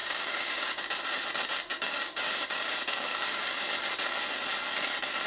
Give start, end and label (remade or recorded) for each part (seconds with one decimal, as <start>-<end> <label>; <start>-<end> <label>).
0.0-0.8 remade; 0.8-1.7 recorded; 1.7-3.7 remade; 3.7-5.3 recorded